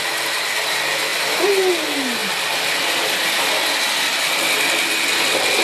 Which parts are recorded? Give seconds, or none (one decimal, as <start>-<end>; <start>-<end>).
0.0-5.6